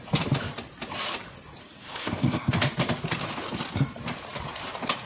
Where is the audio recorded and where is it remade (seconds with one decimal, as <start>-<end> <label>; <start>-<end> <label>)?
0.0-1.8 recorded; 1.8-2.5 remade; 2.5-5.1 recorded